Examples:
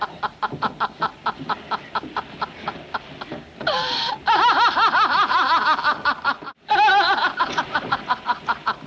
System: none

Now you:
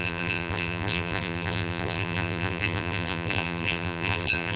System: vocoder, BigVGAN v2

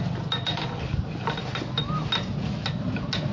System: none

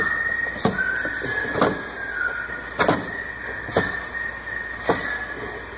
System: none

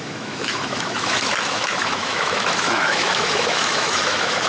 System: autoencoder, DAC-VAE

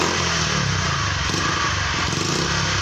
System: none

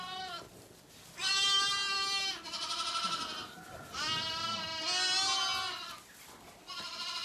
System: none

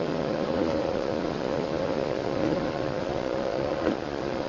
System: vocoder, Vocos